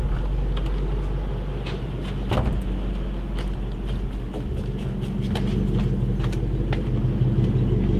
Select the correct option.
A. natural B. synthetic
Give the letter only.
A